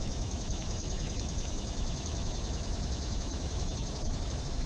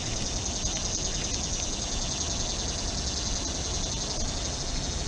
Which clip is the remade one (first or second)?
first